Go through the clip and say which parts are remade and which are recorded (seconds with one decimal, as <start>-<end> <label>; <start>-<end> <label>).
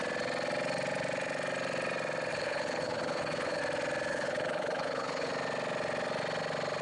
0.0-2.3 recorded; 2.3-3.6 remade; 3.6-4.1 recorded; 4.1-5.3 remade; 5.3-6.8 recorded